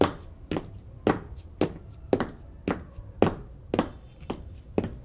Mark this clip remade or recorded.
recorded